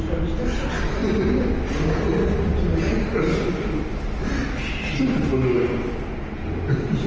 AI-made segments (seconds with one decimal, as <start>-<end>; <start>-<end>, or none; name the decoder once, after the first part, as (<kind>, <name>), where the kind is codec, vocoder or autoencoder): none